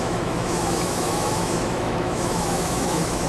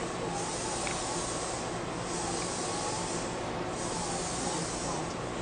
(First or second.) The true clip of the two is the second